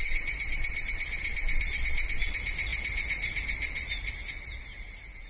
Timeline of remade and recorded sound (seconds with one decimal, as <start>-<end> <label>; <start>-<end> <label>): 0.0-5.3 recorded